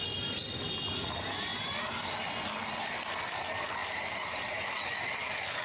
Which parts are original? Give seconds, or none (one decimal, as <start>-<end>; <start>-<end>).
0.0-1.5; 2.0-3.8; 4.6-5.6